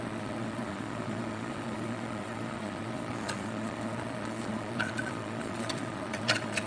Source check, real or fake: fake